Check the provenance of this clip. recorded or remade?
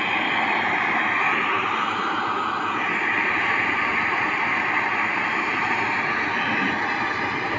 recorded